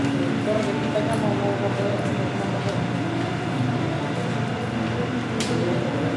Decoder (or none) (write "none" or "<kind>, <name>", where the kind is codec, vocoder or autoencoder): none